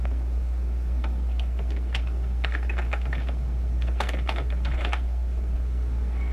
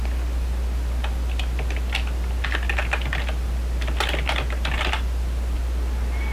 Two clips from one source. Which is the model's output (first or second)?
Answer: first